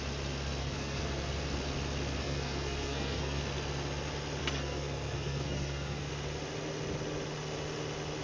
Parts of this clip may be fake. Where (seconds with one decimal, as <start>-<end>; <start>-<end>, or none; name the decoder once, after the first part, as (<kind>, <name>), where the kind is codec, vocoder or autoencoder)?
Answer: 0.6-1.3 (codec, SNAC); 2.2-3.4; 4.4-6.1